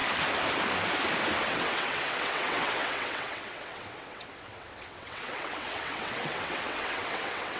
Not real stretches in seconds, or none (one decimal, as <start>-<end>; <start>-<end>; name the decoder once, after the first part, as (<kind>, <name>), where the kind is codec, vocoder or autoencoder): 1.4-7.6 (vocoder, WaveNeXt)